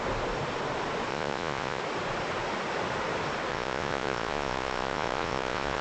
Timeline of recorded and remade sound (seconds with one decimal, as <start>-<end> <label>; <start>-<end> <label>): 0.0-1.1 recorded; 1.1-1.8 remade; 1.8-3.5 recorded; 3.5-5.8 remade